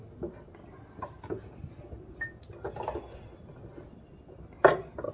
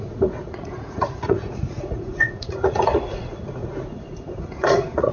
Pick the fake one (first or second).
second